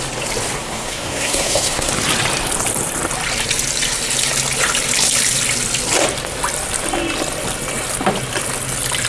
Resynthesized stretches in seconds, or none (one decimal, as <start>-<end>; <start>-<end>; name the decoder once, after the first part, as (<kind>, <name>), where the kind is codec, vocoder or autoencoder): 0.6-1.9 (codec, SNAC)